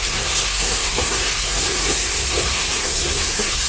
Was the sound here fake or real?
fake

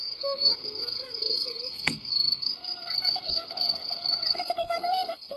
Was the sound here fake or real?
fake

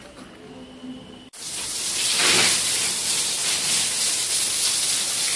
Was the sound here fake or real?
real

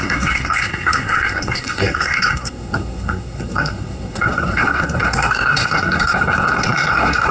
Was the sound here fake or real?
fake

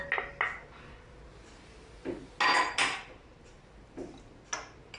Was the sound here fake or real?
real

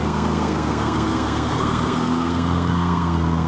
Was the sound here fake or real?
fake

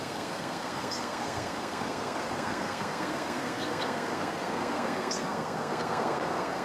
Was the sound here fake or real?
fake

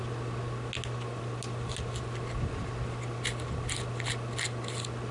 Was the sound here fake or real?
real